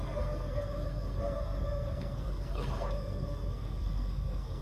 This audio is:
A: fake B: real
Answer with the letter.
A